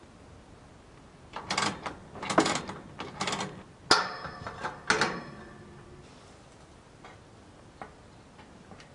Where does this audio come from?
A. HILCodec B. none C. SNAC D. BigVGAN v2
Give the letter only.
B